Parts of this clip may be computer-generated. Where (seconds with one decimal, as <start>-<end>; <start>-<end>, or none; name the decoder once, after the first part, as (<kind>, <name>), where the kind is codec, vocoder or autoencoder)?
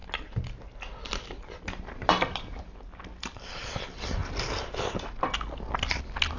none